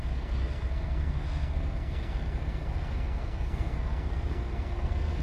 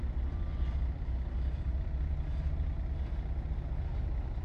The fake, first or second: first